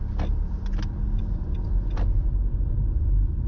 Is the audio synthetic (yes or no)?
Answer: no